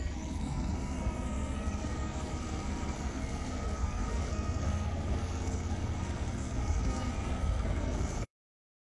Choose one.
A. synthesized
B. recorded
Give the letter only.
A